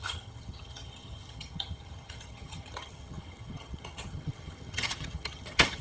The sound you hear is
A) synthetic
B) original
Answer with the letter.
A